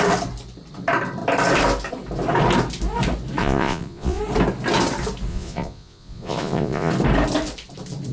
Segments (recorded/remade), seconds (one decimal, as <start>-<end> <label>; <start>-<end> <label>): 0.0-3.4 recorded; 3.4-4.2 remade; 4.2-5.3 recorded; 5.3-6.9 remade; 6.9-8.1 recorded